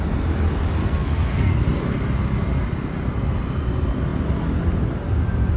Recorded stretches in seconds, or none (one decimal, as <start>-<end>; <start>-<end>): 0.0-0.8; 1.5-5.6

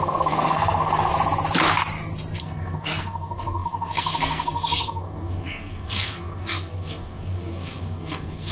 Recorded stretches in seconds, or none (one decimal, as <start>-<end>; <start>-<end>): 1.1-2.4